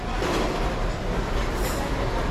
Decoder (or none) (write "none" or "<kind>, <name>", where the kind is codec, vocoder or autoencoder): none